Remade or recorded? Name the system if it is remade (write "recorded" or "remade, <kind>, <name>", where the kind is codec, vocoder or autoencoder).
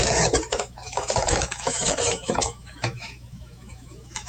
remade, autoencoder, DAC-VAE